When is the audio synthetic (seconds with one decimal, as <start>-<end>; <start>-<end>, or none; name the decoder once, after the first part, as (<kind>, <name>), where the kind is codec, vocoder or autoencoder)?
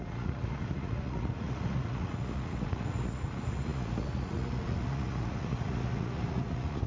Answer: 0.0-6.9 (vocoder, Vocos)